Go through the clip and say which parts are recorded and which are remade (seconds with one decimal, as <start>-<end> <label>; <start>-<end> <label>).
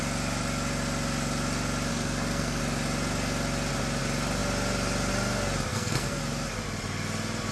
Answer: 0.0-1.9 recorded; 1.9-2.6 remade; 2.6-5.7 recorded; 5.7-6.2 remade; 6.2-7.5 recorded